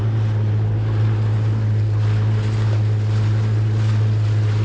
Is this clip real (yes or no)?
yes